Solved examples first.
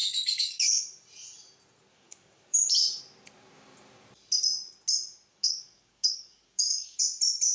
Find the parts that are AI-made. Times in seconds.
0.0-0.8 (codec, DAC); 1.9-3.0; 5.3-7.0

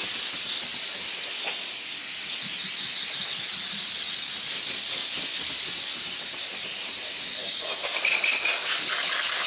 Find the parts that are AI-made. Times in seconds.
7.4-8.1 (codec, DAC)

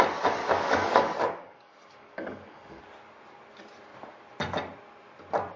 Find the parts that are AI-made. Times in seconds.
0.4-2.8 (codec, DAC)

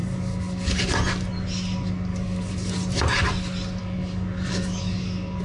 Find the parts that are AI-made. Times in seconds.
0.0-0.8 (codec, DAC); 2.1-2.7; 3.8-5.4

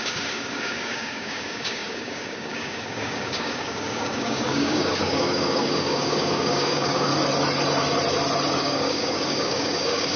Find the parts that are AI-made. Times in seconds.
0.0-7.1 (codec, DAC); 8.6-10.2

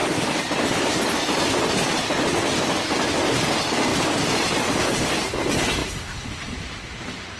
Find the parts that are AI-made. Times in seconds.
none

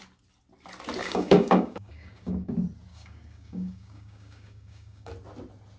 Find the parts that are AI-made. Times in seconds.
1.0-2.5 (codec, DAC); 2.9-5.1

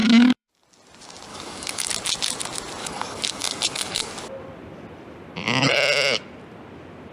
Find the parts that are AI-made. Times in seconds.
0.0-0.5 (codec, DAC); 1.3-1.9; 2.8-4.1